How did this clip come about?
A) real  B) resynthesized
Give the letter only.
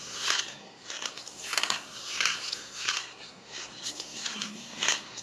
B